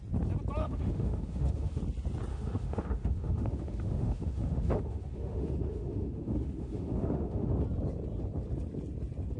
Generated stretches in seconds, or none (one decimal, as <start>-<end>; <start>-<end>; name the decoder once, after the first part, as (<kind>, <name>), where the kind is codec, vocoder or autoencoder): 0.6-1.8 (autoencoder, DAC-VAE); 2.3-7.5